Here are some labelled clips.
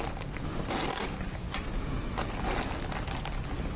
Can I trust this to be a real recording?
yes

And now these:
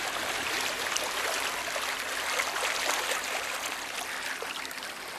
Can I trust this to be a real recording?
yes